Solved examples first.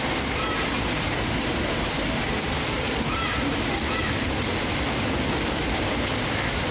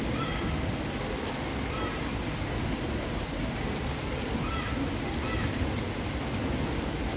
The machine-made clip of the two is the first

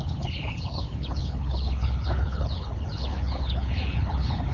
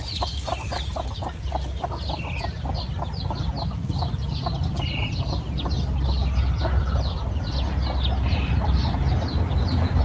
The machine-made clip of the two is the first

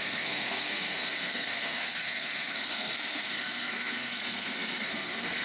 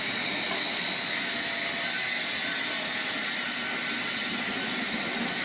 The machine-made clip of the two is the first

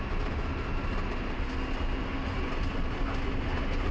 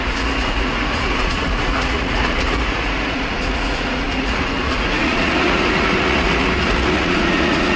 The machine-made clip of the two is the second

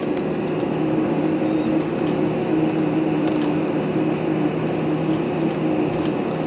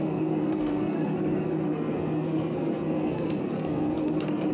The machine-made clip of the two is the second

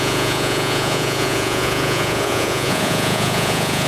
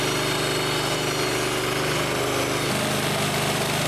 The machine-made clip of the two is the first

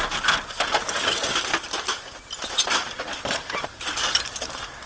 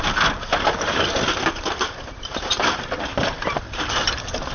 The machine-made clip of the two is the second